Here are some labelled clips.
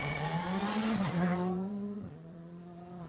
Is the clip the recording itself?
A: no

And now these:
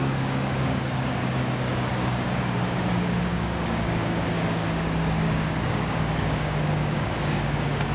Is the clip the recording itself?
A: no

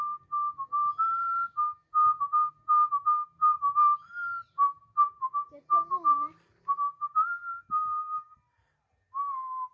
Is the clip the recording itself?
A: yes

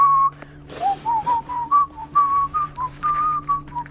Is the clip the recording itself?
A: no